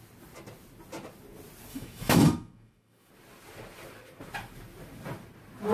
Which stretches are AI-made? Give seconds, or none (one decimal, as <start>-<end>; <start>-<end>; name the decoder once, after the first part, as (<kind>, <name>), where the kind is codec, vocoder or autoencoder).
1.7-3.1 (autoencoder, DAC-VAE)